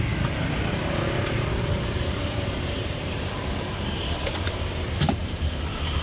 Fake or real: fake